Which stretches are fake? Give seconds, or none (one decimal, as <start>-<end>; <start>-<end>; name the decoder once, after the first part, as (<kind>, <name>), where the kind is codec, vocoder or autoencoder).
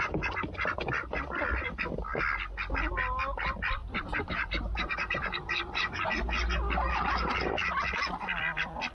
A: 3.8-6.1 (vocoder, BigVGAN v2)